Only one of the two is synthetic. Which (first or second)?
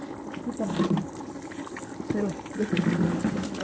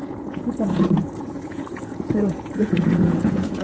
second